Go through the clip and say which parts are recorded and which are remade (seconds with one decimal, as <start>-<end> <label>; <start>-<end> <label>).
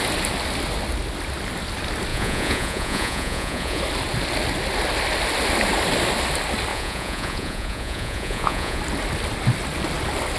0.0-2.1 recorded; 2.1-3.8 remade; 3.8-6.7 recorded; 6.7-8.8 remade; 8.8-10.4 recorded